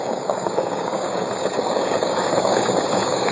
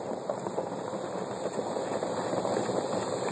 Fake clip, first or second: first